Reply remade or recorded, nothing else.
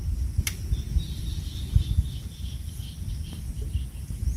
recorded